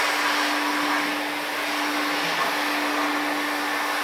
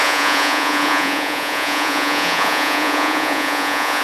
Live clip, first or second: first